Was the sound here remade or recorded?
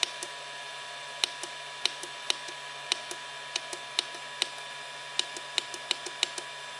recorded